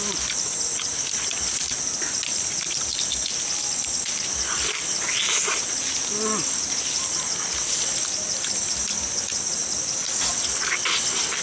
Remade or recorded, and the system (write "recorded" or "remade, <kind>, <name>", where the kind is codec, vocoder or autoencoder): recorded